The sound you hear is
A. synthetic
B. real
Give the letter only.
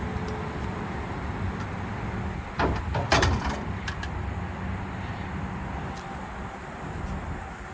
B